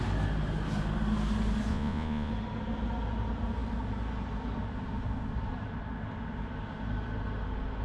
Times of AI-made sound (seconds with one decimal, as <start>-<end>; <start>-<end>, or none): 1.7-2.3